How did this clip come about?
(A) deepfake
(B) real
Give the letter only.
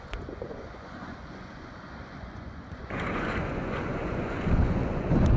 A